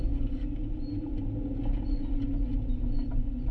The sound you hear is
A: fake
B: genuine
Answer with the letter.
B